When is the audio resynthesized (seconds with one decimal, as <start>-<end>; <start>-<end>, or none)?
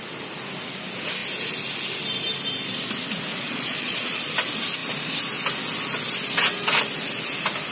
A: 3.3-4.3